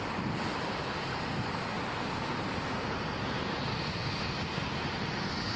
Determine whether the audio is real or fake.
real